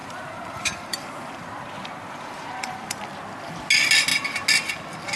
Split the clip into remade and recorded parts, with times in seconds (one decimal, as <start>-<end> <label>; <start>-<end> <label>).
0.0-3.0 remade; 3.0-5.2 recorded